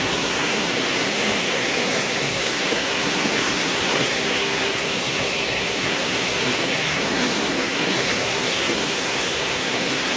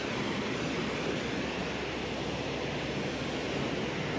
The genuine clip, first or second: second